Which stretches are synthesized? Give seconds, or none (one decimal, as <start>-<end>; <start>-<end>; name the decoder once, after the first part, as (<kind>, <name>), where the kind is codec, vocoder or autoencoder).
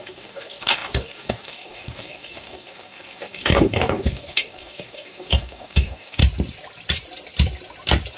0.0-6.2 (codec, DAC)